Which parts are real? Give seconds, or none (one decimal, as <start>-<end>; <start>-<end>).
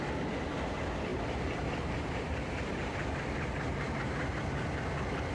0.0-1.1; 4.3-5.3